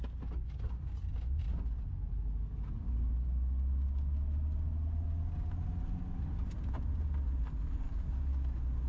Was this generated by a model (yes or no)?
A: no